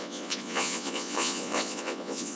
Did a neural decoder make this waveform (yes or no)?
yes